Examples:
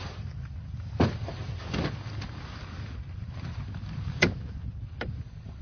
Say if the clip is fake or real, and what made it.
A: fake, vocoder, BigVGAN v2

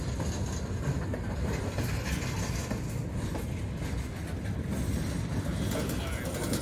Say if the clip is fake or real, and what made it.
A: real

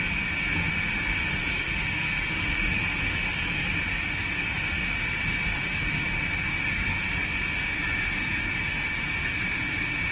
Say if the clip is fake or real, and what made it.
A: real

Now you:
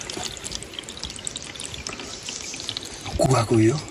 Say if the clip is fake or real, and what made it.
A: real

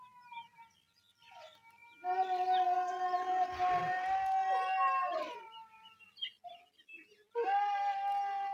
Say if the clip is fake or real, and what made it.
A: real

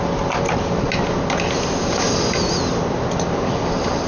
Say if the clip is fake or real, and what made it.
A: real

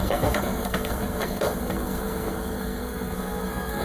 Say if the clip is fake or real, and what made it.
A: fake, codec, SNAC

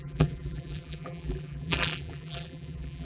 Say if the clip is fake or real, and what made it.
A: fake, vocoder, BigVGAN v2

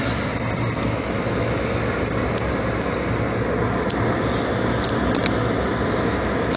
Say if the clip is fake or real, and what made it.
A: real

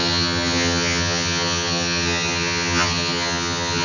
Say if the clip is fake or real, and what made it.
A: fake, vocoder, HiFi-GAN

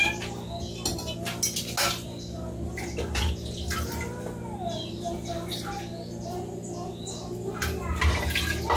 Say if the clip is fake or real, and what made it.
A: real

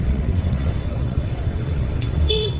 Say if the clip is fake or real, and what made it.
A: fake, vocoder, WaveNeXt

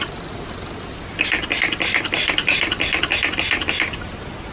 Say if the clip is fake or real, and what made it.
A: real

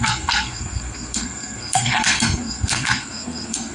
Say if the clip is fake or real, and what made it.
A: fake, codec, SNAC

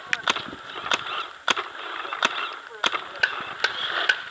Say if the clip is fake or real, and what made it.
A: real